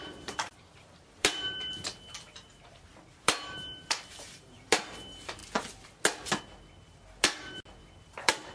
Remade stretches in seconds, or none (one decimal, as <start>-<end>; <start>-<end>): 0.0-1.4; 2.9-4.8; 7.8-8.5